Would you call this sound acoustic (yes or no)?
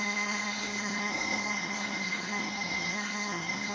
no